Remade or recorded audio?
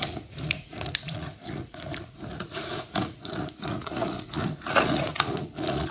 remade